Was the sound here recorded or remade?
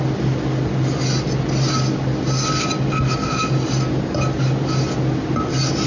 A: recorded